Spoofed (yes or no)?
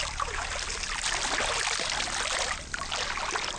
no